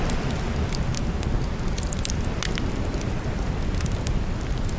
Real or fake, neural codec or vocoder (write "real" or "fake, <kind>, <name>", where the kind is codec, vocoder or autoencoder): real